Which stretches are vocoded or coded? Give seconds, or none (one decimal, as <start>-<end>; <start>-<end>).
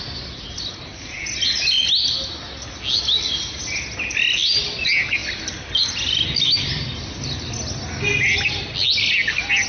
none